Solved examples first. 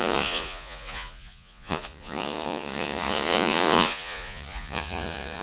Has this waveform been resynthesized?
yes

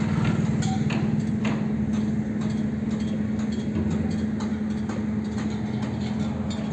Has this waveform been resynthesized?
no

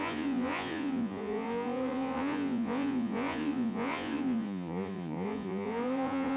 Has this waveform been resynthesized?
yes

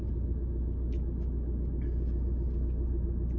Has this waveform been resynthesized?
no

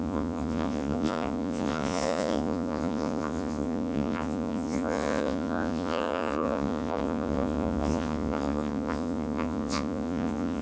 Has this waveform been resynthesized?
yes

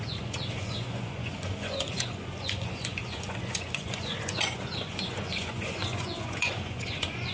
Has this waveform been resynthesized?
yes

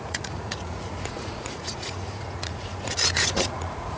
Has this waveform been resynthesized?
yes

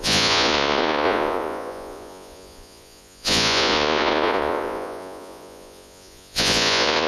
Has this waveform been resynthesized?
yes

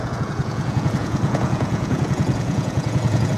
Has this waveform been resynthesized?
yes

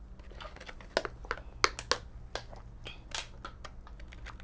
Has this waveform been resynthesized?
no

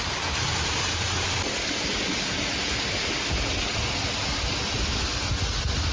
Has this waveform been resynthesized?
no